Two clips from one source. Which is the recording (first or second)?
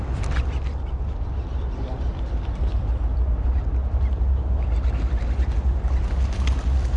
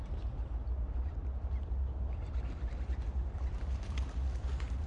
first